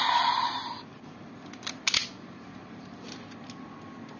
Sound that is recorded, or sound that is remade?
recorded